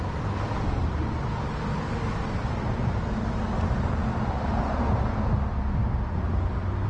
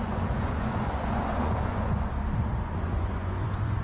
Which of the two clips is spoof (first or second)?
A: second